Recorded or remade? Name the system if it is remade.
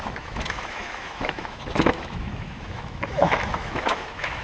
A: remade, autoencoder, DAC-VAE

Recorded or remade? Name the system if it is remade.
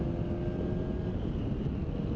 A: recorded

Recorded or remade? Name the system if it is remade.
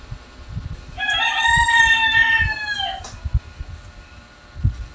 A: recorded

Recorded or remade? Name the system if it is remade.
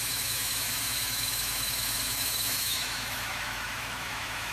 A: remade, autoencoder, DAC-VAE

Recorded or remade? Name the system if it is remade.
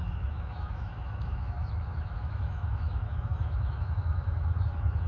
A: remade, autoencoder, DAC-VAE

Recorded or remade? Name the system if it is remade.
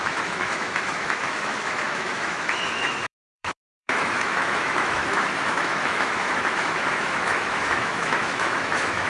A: remade, autoencoder, DAC-VAE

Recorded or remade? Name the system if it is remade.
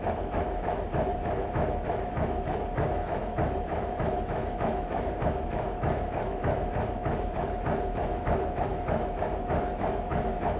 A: remade, autoencoder, DAC-VAE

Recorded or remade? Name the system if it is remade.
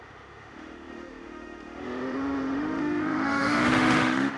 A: remade, autoencoder, DAC-VAE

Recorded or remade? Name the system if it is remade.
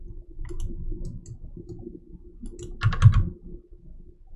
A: recorded